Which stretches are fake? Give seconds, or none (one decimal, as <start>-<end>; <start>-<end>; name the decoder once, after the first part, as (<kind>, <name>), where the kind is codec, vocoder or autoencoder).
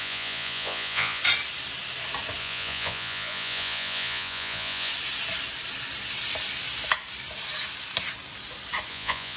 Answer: 0.0-1.2 (vocoder, Vocos); 2.4-4.9; 8.9-9.4